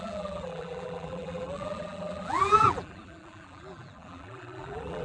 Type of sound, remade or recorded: remade